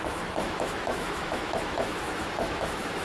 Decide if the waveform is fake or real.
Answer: fake